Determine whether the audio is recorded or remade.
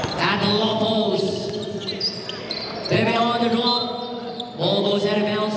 recorded